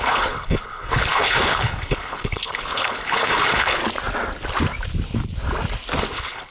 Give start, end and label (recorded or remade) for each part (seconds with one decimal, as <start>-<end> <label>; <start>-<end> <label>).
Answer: 0.0-3.8 remade; 3.8-6.1 recorded; 6.1-6.5 remade